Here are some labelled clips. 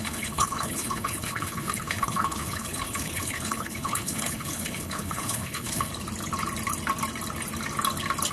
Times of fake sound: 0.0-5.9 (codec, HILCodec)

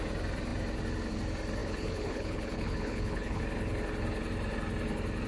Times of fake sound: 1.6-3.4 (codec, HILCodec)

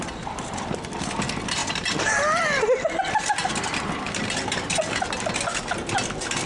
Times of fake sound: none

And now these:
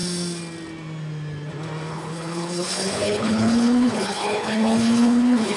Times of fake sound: 1.9-5.6 (codec, HILCodec)